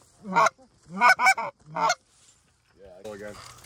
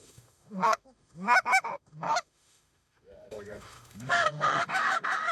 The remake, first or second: second